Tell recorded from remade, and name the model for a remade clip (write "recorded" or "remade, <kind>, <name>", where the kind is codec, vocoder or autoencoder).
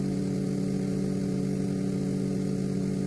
recorded